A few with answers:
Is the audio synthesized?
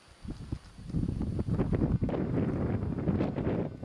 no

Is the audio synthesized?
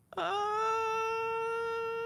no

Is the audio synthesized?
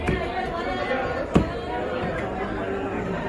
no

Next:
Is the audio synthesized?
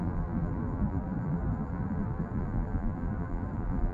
yes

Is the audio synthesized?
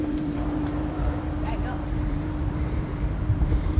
yes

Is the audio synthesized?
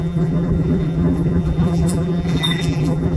yes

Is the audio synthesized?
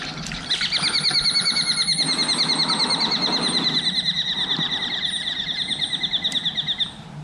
no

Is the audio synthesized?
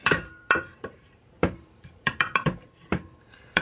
yes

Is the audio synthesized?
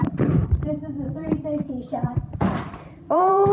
yes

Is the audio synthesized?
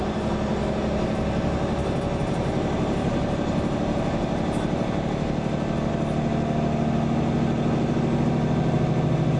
no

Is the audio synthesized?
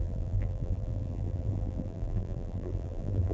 yes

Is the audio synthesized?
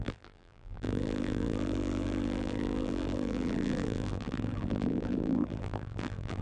yes